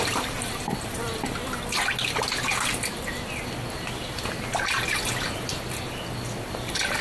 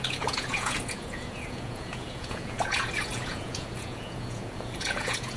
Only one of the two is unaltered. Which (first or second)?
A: first